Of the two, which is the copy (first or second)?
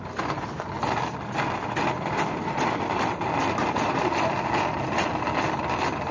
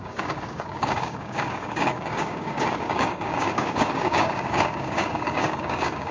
second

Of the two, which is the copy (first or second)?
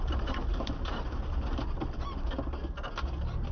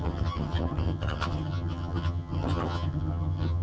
second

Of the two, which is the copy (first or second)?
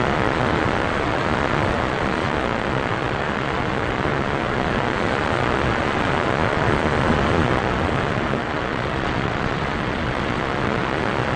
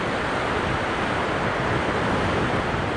first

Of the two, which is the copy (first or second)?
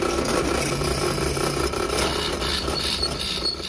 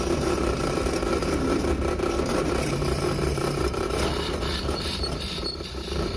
second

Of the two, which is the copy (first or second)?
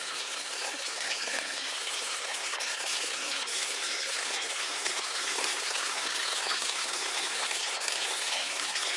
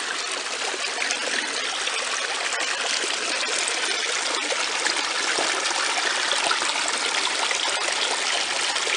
first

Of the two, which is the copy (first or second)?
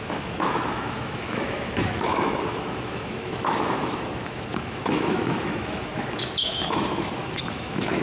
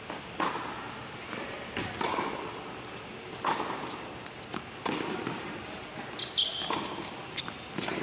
first